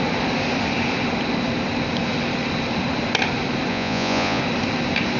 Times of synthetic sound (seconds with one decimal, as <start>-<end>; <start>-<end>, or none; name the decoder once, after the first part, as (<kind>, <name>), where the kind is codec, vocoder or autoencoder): 3.7-4.4 (vocoder, Vocos)